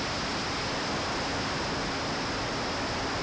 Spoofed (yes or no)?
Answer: no